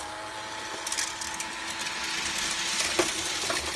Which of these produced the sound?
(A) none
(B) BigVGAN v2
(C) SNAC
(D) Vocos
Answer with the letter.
A